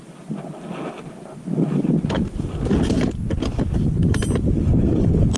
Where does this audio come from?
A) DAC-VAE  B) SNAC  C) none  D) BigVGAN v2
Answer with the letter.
C